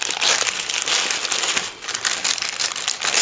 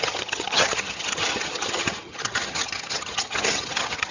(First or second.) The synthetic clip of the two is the second